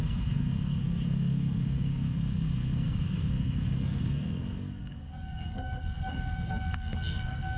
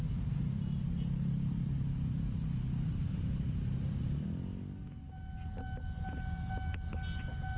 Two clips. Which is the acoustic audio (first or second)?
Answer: second